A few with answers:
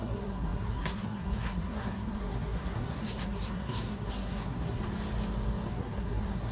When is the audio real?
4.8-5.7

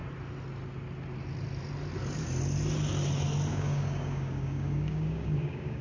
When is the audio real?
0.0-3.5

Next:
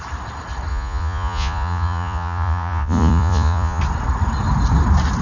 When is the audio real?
0.0-0.7; 3.8-5.2